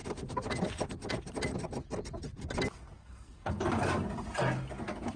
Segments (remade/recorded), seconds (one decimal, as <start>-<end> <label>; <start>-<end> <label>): 0.0-3.0 recorded; 3.0-3.5 remade; 3.5-5.2 recorded